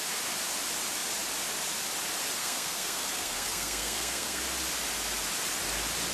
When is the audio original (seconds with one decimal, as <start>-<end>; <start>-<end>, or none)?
0.0-2.4; 4.4-6.1